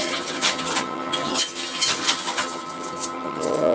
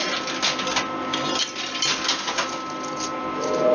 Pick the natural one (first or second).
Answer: second